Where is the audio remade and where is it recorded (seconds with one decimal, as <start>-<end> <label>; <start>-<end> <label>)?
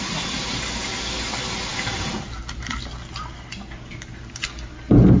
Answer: 0.0-5.2 recorded